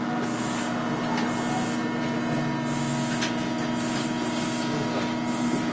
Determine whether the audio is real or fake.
real